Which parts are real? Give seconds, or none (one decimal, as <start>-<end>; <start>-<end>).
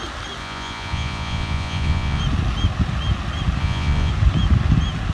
0.0-0.4; 2.2-3.6; 4.1-5.1